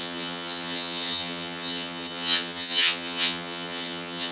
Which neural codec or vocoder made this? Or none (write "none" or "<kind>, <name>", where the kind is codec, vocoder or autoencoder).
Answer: vocoder, HiFi-GAN